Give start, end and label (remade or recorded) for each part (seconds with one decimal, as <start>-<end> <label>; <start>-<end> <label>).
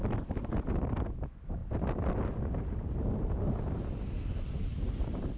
0.0-0.5 remade; 0.5-5.4 recorded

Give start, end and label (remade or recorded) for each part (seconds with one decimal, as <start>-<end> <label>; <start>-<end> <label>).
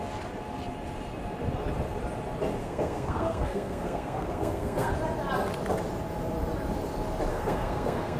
0.0-2.6 recorded; 2.6-4.9 remade; 4.9-7.3 recorded; 7.3-8.2 remade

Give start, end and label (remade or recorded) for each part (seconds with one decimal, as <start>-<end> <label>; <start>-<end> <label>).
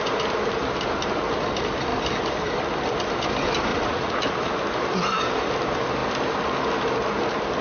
0.0-3.7 recorded; 3.7-4.2 remade; 4.2-7.6 recorded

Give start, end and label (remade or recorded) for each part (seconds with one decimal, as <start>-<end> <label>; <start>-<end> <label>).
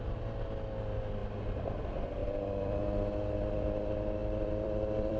0.0-2.2 recorded; 2.2-2.8 remade; 2.8-4.2 recorded; 4.2-5.2 remade